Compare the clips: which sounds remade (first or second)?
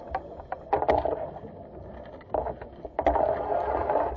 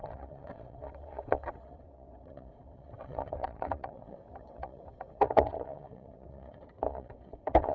second